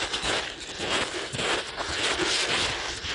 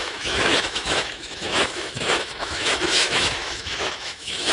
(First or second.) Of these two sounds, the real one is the first